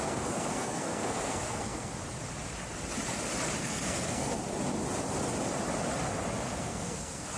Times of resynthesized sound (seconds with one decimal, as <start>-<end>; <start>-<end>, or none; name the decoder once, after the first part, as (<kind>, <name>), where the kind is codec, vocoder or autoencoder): 0.0-1.9 (codec, SNAC); 3.6-4.4; 6.6-7.4